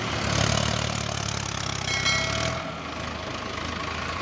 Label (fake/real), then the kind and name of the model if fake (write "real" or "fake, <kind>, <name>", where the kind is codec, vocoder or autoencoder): real